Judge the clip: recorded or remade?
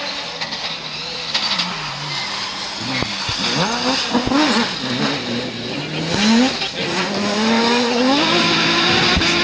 recorded